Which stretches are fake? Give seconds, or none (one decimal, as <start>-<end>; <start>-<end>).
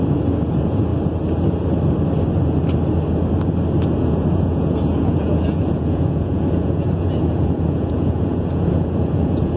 0.0-0.9; 4.0-9.6